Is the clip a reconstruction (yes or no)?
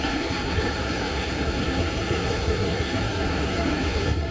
yes